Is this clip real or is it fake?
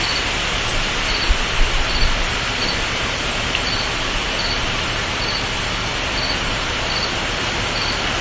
fake